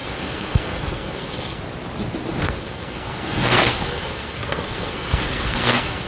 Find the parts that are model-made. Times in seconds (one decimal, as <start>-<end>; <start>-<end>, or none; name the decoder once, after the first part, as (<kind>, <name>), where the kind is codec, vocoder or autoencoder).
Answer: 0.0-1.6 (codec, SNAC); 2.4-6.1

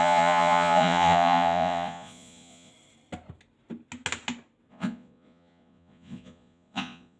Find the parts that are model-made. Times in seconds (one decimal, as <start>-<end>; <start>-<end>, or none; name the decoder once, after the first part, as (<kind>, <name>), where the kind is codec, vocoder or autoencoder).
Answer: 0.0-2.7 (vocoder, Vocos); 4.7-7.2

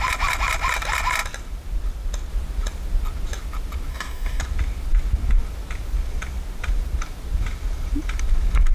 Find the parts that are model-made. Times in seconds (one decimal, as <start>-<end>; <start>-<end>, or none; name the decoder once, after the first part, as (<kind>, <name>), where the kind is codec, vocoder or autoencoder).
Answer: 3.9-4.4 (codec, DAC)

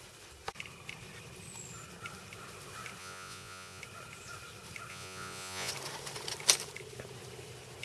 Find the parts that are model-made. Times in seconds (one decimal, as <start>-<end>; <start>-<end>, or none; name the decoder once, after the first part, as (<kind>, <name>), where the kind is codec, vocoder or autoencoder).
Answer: 3.0-3.8 (vocoder, Vocos); 4.9-5.7

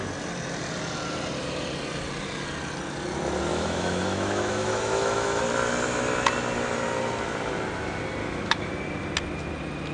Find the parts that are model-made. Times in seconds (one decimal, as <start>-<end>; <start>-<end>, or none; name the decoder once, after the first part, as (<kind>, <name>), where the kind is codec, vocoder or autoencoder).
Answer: 3.5-5.4 (autoencoder, DAC-VAE); 8.2-8.7

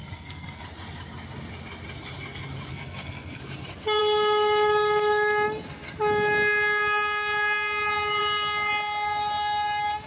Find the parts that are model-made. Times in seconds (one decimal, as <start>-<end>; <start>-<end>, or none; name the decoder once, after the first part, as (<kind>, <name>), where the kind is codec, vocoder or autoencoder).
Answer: 0.0-0.6 (codec, SNAC); 2.7-3.4